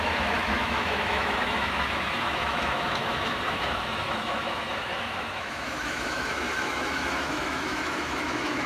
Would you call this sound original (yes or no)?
no